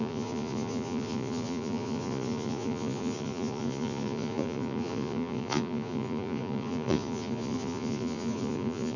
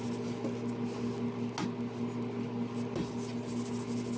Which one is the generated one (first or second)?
first